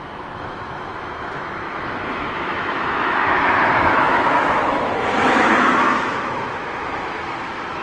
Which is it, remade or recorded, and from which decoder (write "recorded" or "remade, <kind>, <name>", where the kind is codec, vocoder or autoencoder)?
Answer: remade, autoencoder, DAC-VAE